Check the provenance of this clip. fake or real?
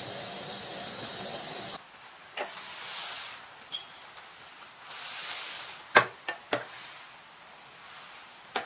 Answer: real